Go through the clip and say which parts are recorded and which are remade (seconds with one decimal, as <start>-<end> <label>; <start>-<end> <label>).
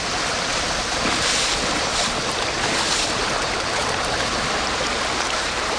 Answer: 0.0-5.8 remade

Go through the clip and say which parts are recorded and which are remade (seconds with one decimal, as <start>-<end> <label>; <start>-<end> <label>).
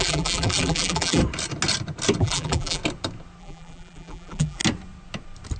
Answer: 0.0-1.2 remade; 1.2-2.2 recorded; 2.2-2.8 remade; 2.8-3.4 recorded; 3.4-4.6 remade; 4.6-5.6 recorded